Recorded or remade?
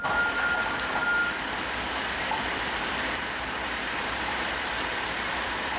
recorded